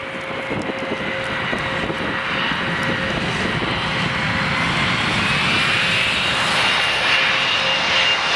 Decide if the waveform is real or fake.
real